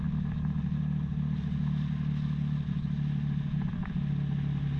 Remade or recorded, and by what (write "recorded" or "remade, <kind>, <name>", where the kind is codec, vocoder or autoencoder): recorded